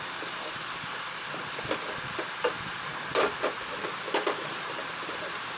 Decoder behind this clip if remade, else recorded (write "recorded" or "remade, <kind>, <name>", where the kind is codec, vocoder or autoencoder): recorded